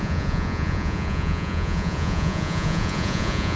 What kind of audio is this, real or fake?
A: fake